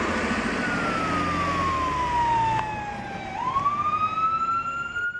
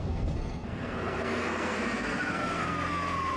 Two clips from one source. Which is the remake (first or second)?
second